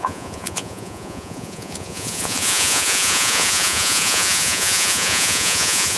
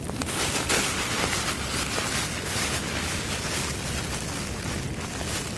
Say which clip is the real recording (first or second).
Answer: second